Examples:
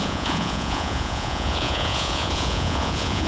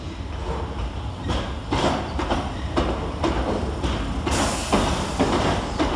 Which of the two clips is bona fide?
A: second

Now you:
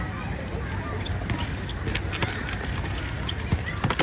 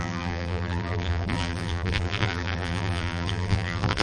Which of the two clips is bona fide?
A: first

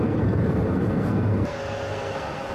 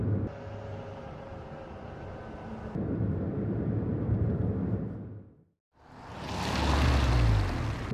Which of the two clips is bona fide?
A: second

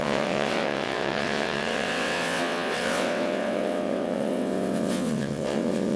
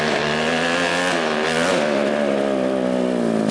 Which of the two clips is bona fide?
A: second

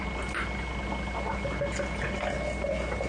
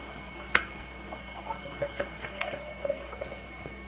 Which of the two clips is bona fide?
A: first